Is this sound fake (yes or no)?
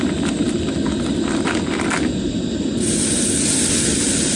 no